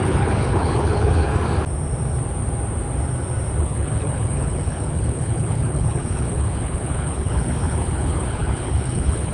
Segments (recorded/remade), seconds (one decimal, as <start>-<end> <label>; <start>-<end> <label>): 0.0-1.3 remade; 1.3-3.6 recorded; 3.6-9.3 remade